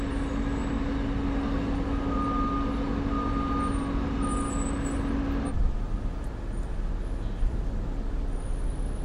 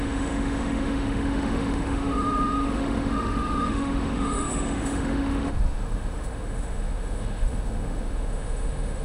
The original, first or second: first